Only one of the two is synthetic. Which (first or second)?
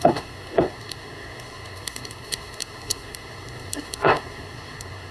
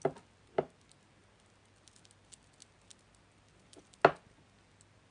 first